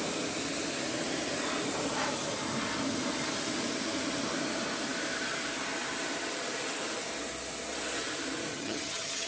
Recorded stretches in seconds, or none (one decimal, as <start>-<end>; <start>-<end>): 0.0-8.5